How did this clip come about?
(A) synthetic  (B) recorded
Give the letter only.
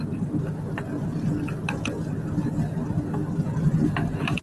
B